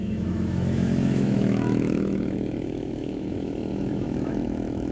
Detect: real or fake fake